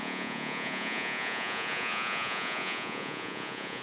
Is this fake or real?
fake